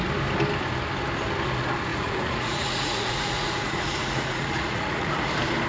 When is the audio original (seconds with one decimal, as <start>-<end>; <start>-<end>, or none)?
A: 0.0-1.9; 5.3-5.7